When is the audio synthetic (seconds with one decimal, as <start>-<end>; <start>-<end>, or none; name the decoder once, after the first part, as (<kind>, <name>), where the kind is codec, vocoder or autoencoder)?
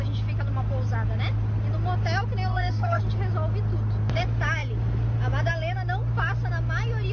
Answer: 2.5-3.0 (codec, SNAC)